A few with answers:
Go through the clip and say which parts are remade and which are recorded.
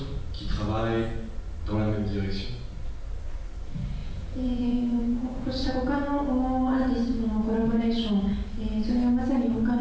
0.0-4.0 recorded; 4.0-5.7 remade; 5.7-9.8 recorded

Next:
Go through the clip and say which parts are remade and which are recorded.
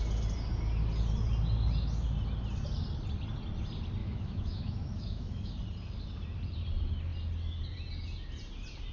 0.0-4.0 recorded; 4.0-5.5 remade; 5.5-8.9 recorded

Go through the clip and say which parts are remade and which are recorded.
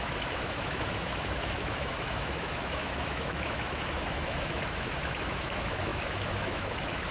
0.0-7.1 remade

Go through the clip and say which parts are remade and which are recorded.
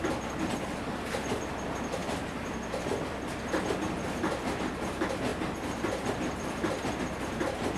0.0-2.0 recorded; 2.0-4.7 remade; 4.7-7.8 recorded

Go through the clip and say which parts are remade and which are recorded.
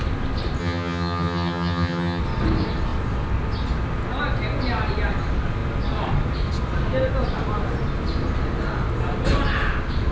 0.0-0.6 recorded; 0.6-2.2 remade; 2.2-10.1 recorded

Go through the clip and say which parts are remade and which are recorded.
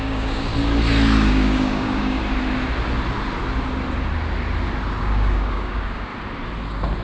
0.0-0.5 remade; 0.5-1.3 recorded; 1.3-2.2 remade; 2.2-5.0 recorded; 5.0-6.1 remade; 6.1-7.0 recorded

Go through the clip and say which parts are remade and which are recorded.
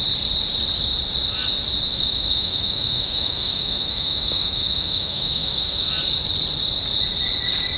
0.0-1.9 recorded; 1.9-5.9 remade; 5.9-7.8 recorded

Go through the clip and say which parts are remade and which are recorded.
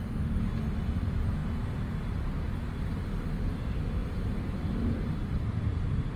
0.0-4.0 recorded; 4.0-6.2 remade